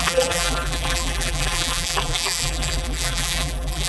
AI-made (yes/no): yes